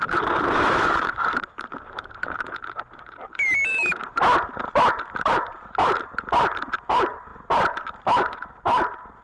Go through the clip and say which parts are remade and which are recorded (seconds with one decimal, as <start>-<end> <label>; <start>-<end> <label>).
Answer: 0.0-4.2 remade; 4.2-5.0 recorded; 5.0-9.2 remade

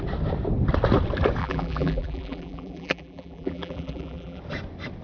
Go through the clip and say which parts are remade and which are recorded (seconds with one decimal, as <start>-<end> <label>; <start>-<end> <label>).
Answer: 0.0-1.4 recorded; 1.4-4.4 remade; 4.4-5.0 recorded

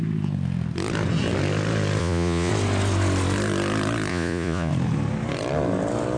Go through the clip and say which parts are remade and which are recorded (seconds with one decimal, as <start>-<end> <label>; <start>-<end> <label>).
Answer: 0.0-2.0 recorded; 2.0-2.5 remade; 2.5-4.1 recorded; 4.1-4.7 remade; 4.7-6.2 recorded